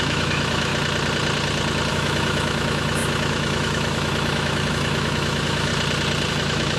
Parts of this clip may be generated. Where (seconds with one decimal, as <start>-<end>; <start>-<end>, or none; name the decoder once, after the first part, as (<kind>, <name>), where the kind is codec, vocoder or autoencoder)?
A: 0.0-0.7 (autoencoder, DAC-VAE); 1.9-5.7; 6.3-6.8